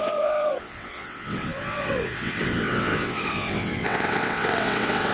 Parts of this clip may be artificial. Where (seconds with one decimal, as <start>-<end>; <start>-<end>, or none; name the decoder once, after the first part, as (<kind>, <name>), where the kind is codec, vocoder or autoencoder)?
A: 0.0-5.1 (vocoder, WaveNeXt)